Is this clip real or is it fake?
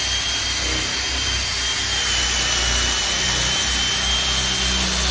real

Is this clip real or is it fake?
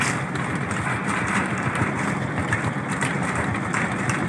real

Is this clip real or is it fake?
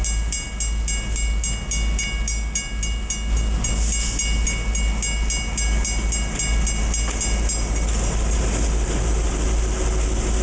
real